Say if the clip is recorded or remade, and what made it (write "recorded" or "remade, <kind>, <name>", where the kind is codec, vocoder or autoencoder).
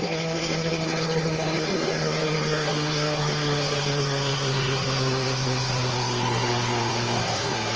remade, codec, SNAC